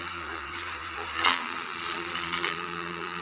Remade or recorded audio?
remade